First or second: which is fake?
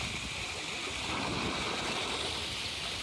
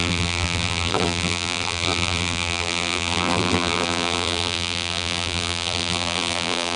second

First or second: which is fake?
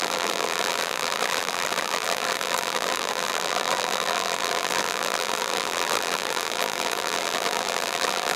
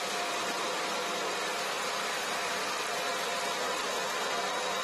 first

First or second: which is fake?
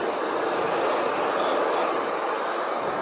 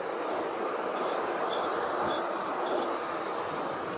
second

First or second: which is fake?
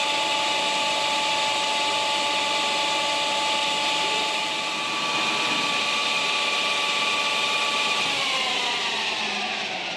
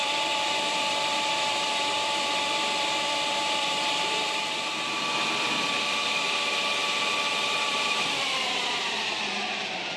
second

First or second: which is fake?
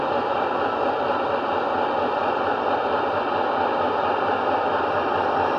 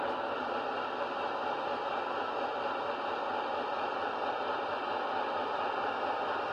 first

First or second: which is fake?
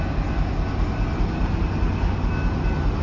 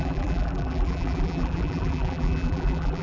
second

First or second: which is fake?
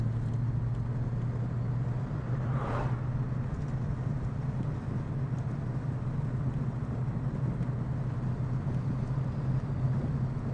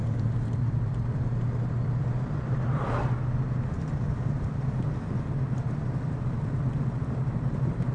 second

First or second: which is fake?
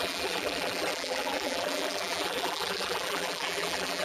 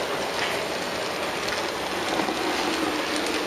first